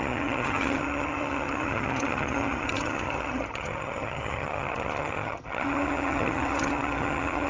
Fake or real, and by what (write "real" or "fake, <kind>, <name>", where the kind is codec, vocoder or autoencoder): fake, vocoder, HiFi-GAN